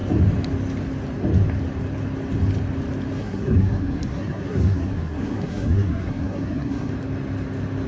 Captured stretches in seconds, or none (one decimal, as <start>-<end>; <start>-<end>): 0.0-3.2; 6.9-7.9